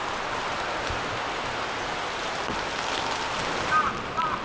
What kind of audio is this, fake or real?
real